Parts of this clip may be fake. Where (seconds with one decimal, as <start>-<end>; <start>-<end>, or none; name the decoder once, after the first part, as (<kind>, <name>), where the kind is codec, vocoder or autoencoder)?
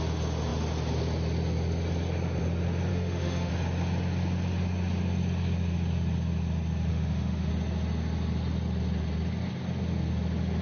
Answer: 2.9-3.5 (autoencoder, DAC-VAE); 6.9-7.5